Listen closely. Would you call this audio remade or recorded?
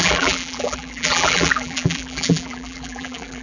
remade